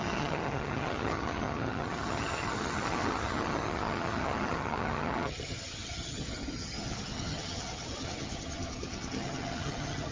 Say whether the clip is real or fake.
fake